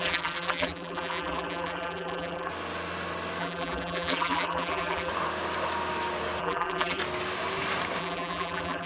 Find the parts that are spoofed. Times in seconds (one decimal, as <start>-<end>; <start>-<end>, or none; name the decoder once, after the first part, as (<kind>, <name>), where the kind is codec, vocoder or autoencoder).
0.0-2.5 (vocoder, BigVGAN v2); 3.4-5.1; 6.4-7.0; 8.0-8.9